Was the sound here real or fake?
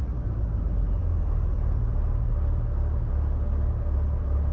real